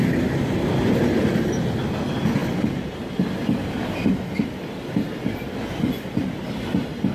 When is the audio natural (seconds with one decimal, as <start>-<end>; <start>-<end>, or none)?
0.0-7.1